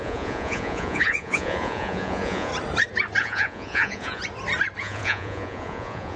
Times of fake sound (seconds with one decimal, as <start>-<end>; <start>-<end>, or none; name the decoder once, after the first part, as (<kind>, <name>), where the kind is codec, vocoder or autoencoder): 0.0-2.5 (vocoder, Vocos); 3.2-4.2; 4.8-6.2